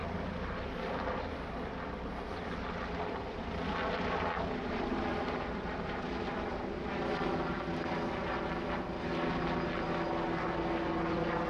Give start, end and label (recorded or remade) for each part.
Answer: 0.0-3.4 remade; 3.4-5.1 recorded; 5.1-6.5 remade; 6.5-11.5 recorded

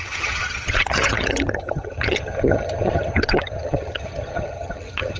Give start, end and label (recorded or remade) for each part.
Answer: 0.0-5.2 remade

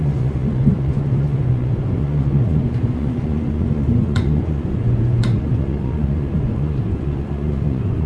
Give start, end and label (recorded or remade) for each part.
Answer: 0.0-8.1 remade